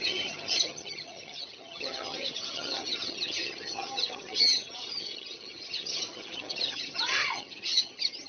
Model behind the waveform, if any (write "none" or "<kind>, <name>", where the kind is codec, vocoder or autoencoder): vocoder, HiFi-GAN